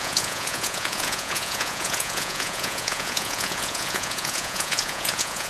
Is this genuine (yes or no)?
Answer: no